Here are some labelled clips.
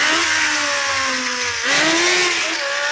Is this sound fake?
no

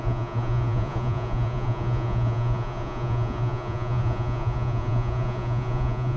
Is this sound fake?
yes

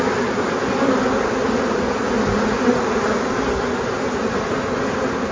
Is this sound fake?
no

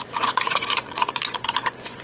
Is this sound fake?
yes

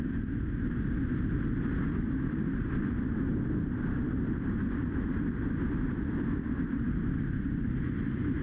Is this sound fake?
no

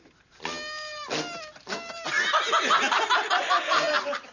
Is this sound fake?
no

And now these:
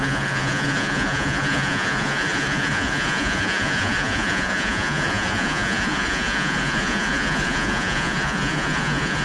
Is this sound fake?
yes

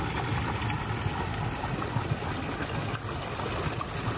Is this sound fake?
no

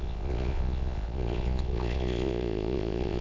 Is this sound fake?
yes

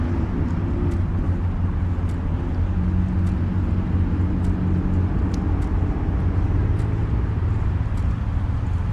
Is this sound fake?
no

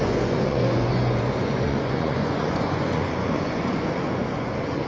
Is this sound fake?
yes